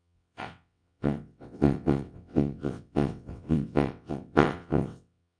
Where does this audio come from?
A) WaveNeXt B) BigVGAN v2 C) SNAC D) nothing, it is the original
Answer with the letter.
A